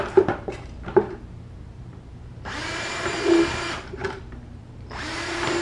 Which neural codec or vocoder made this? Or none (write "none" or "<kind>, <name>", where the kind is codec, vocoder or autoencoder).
vocoder, BigVGAN v2